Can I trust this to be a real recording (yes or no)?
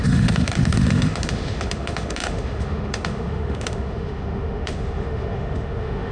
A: no